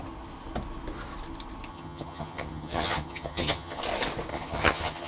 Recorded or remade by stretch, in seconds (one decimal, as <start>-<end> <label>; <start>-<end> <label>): 0.0-1.7 recorded; 1.7-3.8 remade; 3.8-4.3 recorded; 4.3-5.1 remade